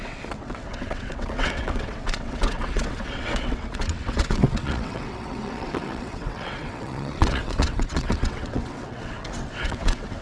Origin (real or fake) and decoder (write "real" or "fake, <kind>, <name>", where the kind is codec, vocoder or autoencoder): fake, vocoder, WaveNeXt